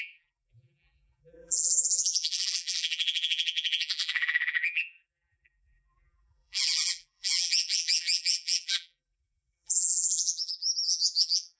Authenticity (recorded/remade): remade